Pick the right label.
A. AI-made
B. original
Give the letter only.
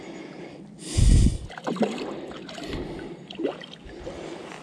B